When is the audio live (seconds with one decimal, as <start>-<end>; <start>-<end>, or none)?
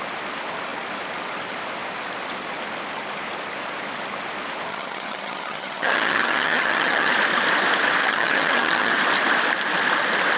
0.0-4.7; 7.1-8.0; 8.9-10.4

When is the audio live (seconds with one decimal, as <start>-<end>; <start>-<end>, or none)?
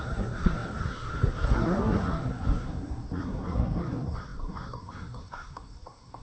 none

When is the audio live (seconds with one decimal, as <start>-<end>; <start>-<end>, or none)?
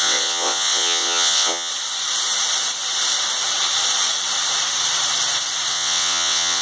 1.7-5.7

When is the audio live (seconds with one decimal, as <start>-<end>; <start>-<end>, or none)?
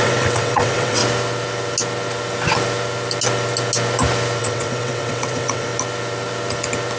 1.0-4.4; 5.7-7.0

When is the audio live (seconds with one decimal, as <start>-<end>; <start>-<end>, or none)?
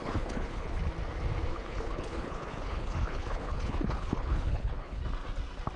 0.8-1.5; 5.0-5.8